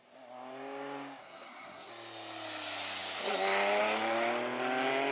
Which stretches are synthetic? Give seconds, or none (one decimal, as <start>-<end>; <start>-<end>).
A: 1.2-1.9